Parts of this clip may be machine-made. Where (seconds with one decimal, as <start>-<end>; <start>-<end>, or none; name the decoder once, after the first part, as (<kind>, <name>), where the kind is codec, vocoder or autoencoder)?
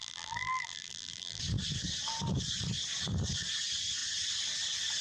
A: 0.0-1.4 (vocoder, BigVGAN v2)